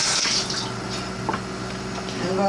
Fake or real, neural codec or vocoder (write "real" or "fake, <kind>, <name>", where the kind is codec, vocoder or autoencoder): real